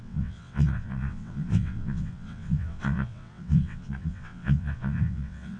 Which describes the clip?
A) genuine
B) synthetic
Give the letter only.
B